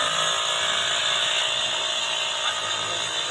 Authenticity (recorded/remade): recorded